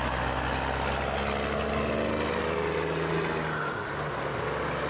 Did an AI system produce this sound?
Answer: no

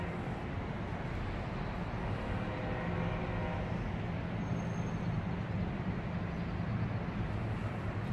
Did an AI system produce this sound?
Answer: no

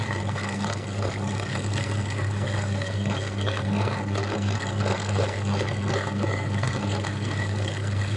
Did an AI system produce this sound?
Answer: yes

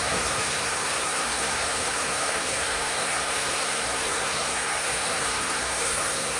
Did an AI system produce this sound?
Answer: yes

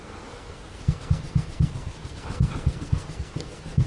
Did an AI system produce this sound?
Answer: yes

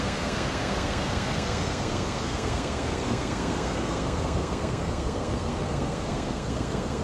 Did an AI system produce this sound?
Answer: yes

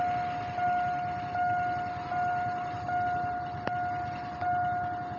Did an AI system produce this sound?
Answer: no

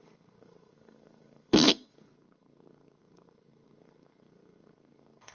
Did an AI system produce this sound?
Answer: yes